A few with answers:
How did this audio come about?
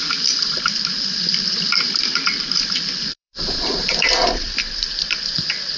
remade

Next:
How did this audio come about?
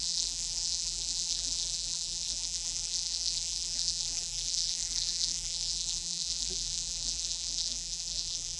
remade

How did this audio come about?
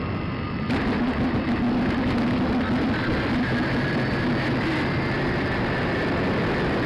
remade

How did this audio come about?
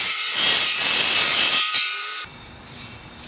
remade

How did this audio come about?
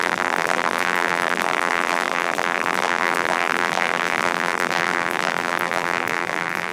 remade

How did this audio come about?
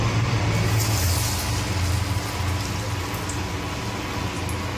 recorded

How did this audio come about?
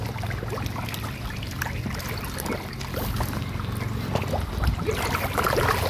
recorded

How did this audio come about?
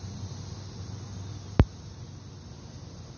remade